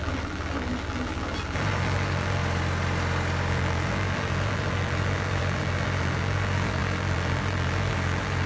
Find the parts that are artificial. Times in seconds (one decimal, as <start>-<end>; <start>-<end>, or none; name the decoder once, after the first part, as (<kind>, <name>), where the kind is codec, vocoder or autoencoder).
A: 0.0-2.4 (vocoder, BigVGAN v2); 3.5-8.5